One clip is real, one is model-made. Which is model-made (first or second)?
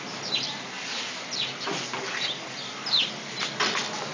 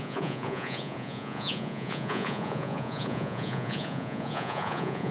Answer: second